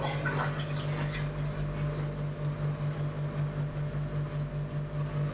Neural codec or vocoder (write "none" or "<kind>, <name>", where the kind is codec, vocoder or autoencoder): none